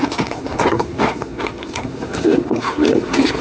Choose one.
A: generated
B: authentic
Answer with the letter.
A